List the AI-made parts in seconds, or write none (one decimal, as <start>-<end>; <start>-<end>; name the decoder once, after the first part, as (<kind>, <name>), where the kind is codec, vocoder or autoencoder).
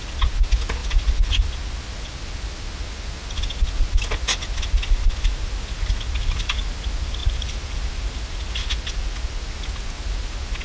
7.2-7.9 (vocoder, BigVGAN v2)